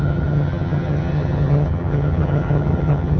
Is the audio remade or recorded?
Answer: remade